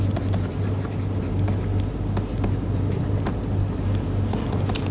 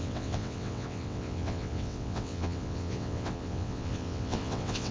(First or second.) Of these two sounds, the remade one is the second